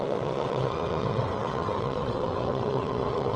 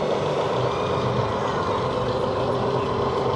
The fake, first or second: first